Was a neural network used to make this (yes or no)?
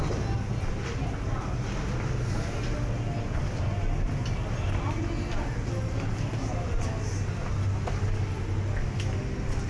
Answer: no